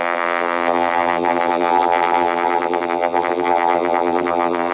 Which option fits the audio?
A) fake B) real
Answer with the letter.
A